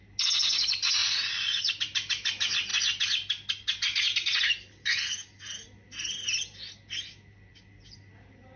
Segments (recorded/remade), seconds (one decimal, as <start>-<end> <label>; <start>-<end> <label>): 0.0-8.6 recorded